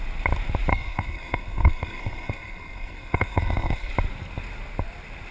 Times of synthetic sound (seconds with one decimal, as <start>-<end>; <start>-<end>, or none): 0.7-3.9